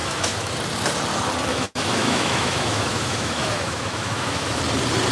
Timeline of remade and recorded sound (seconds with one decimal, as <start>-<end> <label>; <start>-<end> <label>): 0.0-0.5 remade; 0.5-1.5 recorded; 1.5-4.6 remade; 4.6-5.1 recorded